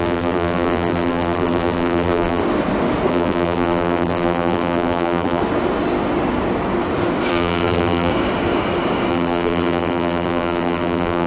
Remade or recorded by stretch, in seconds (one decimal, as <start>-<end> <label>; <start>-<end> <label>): 0.0-2.4 remade; 2.4-3.1 recorded; 3.1-5.4 remade; 5.4-7.3 recorded; 7.3-8.1 remade; 8.1-9.1 recorded; 9.1-11.3 remade

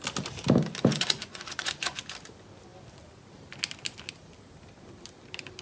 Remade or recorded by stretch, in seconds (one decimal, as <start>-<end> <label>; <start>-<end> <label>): 0.0-0.9 recorded; 0.9-2.0 remade; 2.0-5.6 recorded

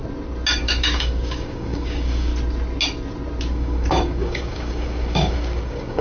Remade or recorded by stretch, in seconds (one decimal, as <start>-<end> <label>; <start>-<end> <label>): 0.0-0.6 recorded; 0.6-2.3 remade; 2.3-3.5 recorded; 3.5-6.0 remade

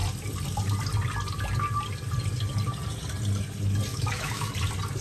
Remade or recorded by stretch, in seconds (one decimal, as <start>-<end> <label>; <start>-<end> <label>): 0.0-3.9 recorded; 3.9-4.5 remade; 4.5-5.0 recorded

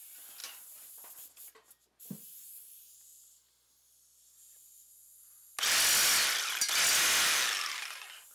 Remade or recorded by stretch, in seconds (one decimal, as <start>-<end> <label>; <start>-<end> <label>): 0.0-8.3 recorded